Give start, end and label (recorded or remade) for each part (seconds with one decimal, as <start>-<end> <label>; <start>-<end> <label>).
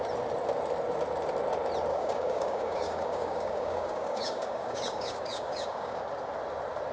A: 0.0-1.9 recorded; 1.9-6.0 remade; 6.0-6.9 recorded